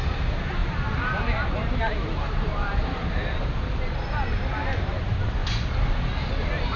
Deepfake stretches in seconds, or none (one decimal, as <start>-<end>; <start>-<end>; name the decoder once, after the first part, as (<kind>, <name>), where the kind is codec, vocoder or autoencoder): 0.0-5.4 (vocoder, BigVGAN v2)